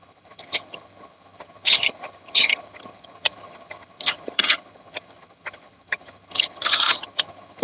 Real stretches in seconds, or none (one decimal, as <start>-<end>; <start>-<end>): none